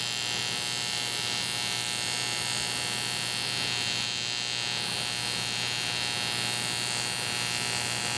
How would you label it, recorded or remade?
recorded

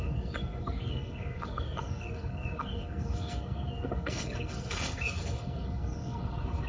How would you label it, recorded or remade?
remade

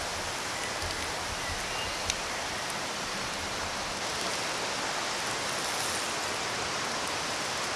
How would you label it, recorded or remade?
recorded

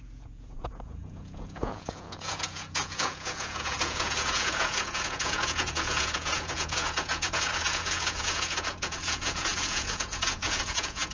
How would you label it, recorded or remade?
remade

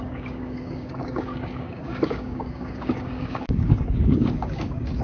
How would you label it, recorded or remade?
remade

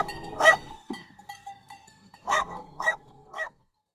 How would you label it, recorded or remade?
remade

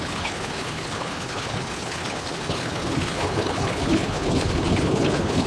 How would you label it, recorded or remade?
remade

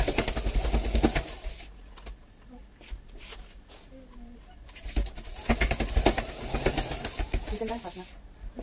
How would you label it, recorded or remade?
recorded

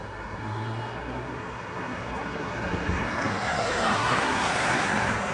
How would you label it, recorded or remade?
remade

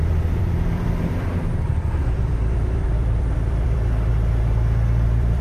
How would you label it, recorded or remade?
remade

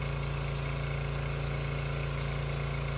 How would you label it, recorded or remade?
recorded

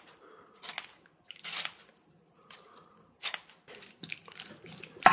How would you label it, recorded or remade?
recorded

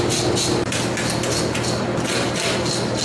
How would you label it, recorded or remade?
recorded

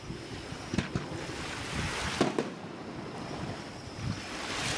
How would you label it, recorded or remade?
recorded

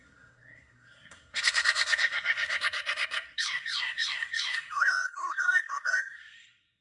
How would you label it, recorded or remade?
remade